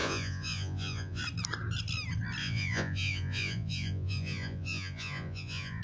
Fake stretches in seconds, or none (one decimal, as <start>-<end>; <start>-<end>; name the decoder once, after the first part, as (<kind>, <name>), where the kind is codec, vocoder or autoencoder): 0.0-1.2 (vocoder, Vocos); 2.4-5.8